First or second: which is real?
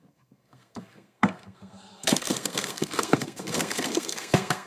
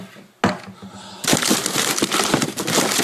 second